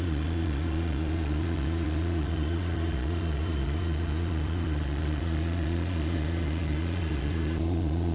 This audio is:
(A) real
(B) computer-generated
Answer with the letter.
B